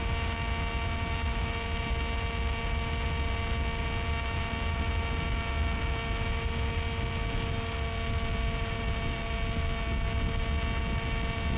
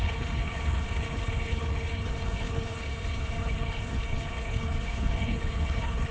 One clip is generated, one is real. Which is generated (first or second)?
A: second